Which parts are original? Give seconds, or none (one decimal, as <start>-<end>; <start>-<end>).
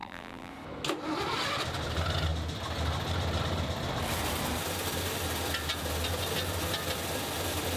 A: 0.5-7.8